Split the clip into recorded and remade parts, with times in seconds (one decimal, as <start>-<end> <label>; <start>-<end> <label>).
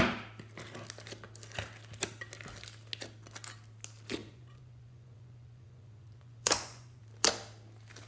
0.0-4.2 recorded; 4.2-7.0 remade; 7.0-8.1 recorded